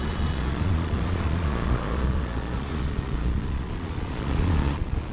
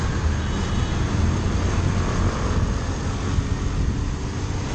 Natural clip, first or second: second